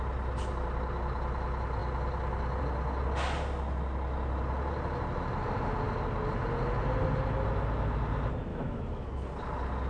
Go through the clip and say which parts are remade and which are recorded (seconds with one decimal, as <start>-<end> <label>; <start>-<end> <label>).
0.0-8.5 recorded; 8.5-9.1 remade; 9.1-9.9 recorded